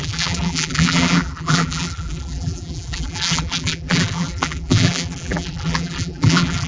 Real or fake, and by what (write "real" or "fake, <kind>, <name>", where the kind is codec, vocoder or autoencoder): fake, vocoder, BigVGAN v2